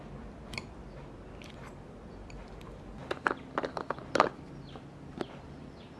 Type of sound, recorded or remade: recorded